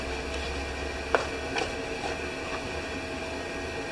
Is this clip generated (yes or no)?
no